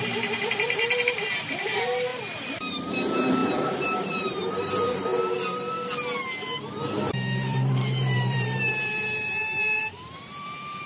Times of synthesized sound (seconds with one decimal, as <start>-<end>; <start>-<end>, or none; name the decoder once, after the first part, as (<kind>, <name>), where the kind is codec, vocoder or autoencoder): 0.0-2.1 (vocoder, BigVGAN v2); 2.9-5.1; 7.1-10.9

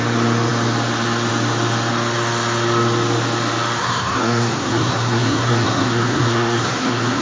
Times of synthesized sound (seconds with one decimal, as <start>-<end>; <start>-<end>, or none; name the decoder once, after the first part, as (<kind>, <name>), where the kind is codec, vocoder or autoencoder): 3.8-7.2 (codec, SNAC)

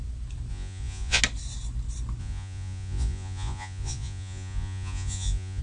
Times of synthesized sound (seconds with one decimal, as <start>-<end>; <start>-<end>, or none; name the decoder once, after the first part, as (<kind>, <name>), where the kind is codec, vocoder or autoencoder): 0.5-1.2 (vocoder, Vocos); 2.2-5.6

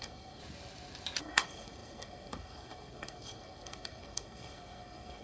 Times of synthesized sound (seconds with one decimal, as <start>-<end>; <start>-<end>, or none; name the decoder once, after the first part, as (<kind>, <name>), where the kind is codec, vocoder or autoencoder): 0.0-0.4 (codec, SNAC); 1.2-5.2

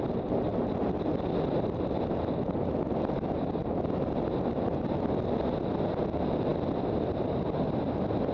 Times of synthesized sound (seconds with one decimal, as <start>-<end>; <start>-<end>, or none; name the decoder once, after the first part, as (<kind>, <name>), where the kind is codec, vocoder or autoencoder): none